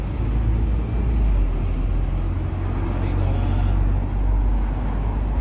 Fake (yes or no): no